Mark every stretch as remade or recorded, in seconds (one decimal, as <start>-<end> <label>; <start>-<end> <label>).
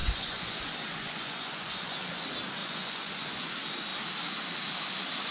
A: 0.0-2.2 remade; 2.2-2.6 recorded; 2.6-3.5 remade; 3.5-5.3 recorded